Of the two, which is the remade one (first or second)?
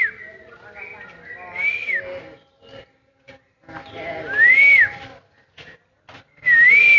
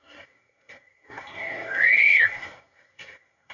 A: second